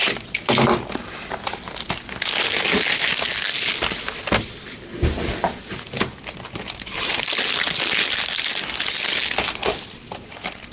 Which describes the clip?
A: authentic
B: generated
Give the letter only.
A